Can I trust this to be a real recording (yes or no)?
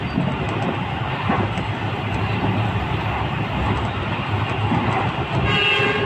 yes